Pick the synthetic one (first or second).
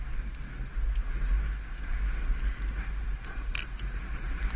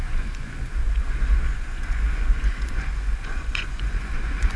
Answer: second